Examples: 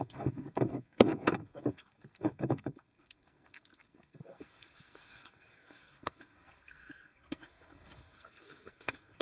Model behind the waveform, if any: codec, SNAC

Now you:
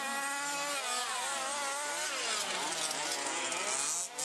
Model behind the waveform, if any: none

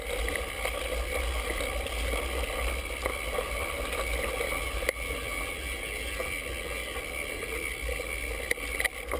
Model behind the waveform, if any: none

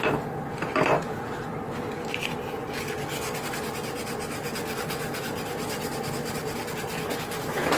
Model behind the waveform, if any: none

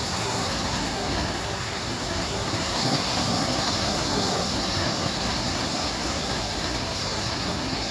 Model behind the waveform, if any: codec, SNAC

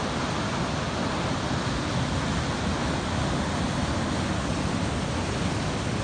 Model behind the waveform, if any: none